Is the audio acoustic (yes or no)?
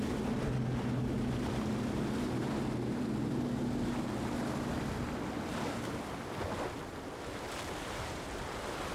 yes